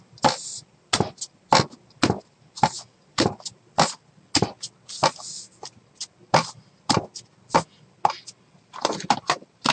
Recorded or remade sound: recorded